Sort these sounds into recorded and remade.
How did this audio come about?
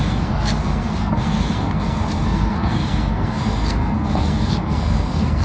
remade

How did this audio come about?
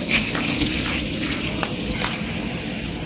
recorded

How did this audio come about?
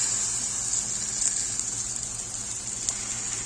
recorded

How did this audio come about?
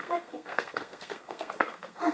remade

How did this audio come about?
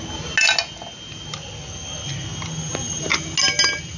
recorded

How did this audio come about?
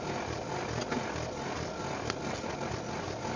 recorded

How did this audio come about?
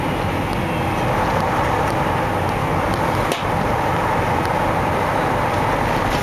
recorded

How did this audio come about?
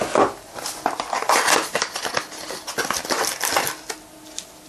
recorded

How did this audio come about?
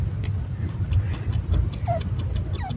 recorded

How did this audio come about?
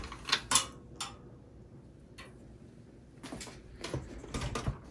recorded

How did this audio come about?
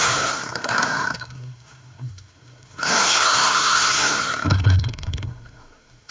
remade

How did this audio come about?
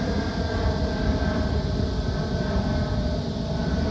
recorded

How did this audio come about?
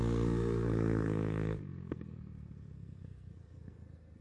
remade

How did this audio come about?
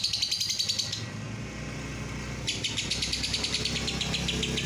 recorded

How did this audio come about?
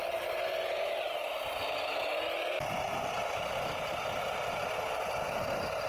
recorded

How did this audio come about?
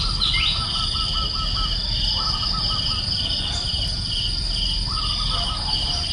recorded